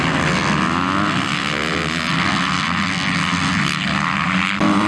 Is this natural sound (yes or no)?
yes